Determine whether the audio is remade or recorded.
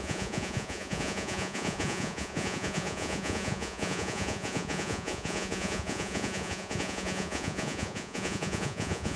remade